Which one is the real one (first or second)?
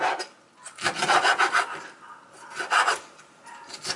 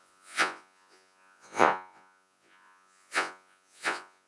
first